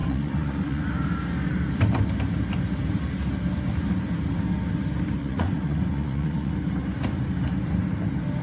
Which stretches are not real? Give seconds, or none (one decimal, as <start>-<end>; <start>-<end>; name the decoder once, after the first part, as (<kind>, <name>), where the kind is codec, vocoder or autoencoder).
0.0-0.9 (vocoder, Vocos); 5.2-6.5